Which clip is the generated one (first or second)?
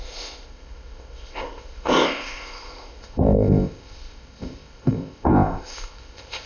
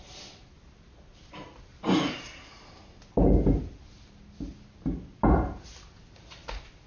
first